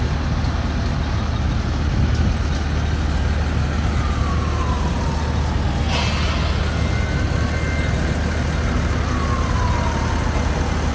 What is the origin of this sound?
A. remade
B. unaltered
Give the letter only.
B